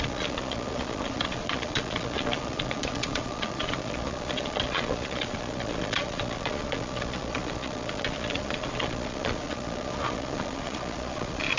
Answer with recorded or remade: remade